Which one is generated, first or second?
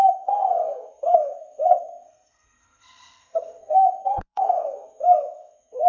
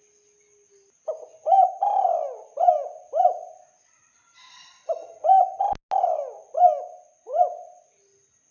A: first